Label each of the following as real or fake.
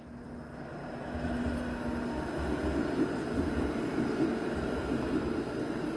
real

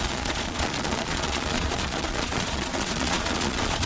fake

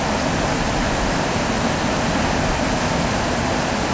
real